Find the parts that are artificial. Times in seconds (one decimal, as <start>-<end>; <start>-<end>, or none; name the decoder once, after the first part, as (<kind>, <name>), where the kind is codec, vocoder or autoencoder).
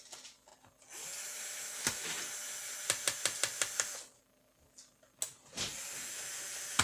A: none